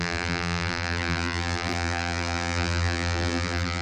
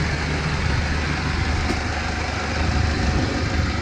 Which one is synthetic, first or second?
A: first